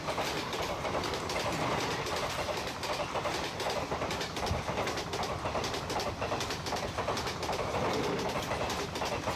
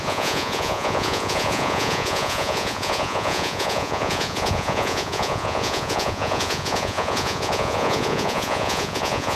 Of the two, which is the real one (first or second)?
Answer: first